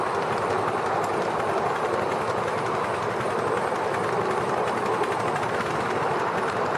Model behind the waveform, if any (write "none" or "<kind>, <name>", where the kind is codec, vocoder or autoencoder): none